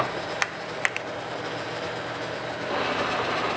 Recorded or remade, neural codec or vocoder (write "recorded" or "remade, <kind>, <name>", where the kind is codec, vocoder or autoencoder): recorded